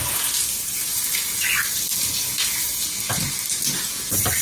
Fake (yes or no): no